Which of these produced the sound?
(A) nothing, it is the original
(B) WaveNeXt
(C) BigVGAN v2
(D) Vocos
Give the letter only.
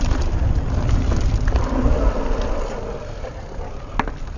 A